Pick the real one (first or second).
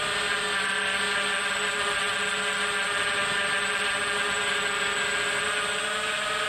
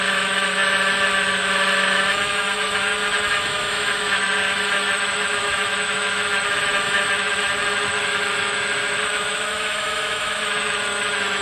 first